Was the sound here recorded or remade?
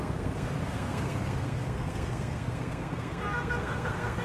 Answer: remade